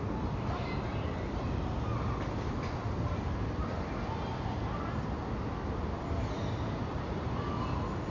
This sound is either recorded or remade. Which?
recorded